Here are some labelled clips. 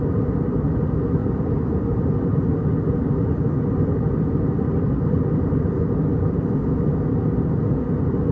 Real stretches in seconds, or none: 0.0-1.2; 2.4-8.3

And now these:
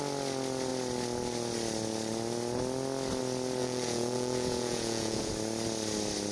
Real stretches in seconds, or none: 0.0-3.6; 5.3-6.3

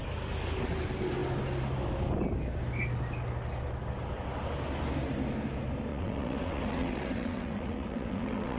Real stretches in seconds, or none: 0.0-5.9

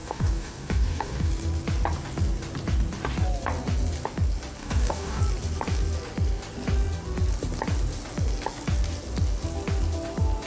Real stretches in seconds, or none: 1.3-4.6; 5.2-10.5

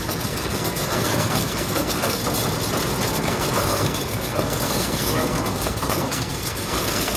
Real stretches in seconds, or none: 2.2-3.1

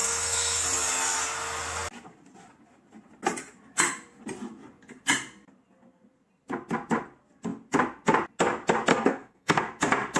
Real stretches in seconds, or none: 0.6-8.9; 9.6-10.2

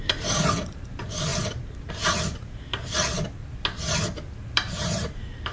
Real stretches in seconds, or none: 1.3-1.9; 2.7-4.5